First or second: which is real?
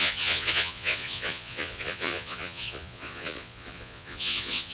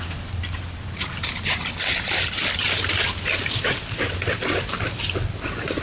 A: second